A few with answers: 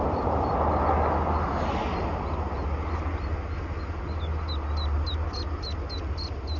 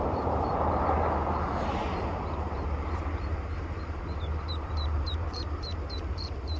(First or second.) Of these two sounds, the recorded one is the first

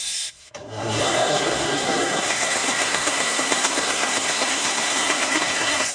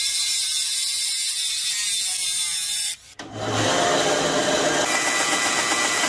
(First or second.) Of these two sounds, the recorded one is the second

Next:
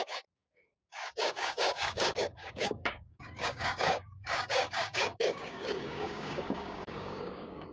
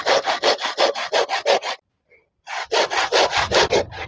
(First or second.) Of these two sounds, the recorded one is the second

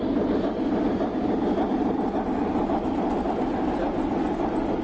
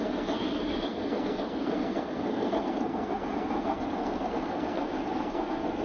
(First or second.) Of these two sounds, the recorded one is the first